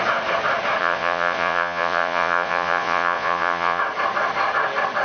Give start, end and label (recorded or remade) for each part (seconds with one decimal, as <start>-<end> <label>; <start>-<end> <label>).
0.0-0.8 recorded; 0.8-3.8 remade; 3.8-5.0 recorded